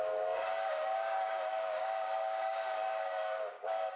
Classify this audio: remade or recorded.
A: remade